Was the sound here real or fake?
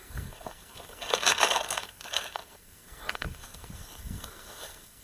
fake